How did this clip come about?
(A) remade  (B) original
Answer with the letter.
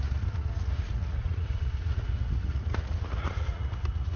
A